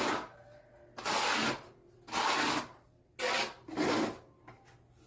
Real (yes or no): yes